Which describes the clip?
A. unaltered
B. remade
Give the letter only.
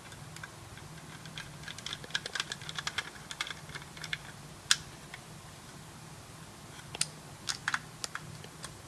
A